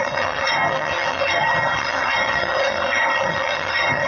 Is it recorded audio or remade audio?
remade